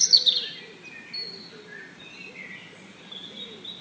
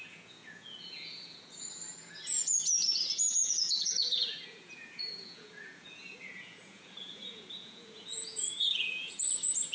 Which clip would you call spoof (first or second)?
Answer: second